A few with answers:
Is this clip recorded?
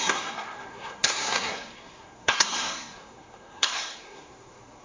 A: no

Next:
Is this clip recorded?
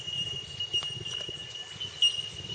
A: yes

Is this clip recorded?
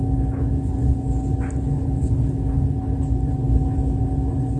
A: yes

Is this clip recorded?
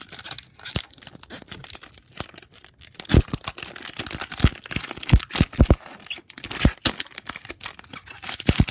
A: yes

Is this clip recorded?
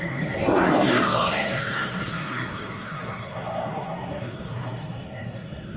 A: no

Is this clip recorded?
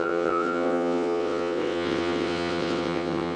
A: no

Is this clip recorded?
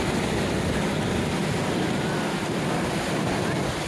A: yes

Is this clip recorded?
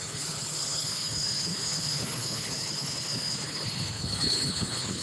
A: no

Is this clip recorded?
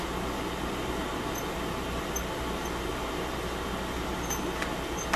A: yes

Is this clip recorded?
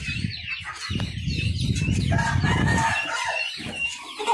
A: yes